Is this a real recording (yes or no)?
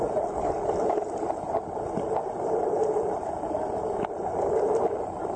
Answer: yes